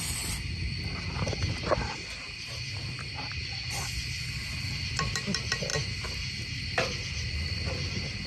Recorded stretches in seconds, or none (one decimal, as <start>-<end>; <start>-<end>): 0.0-8.3